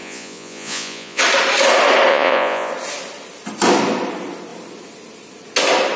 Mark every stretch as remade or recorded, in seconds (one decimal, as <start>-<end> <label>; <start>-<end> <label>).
0.0-1.2 remade; 1.2-2.1 recorded; 2.1-2.7 remade; 2.7-6.0 recorded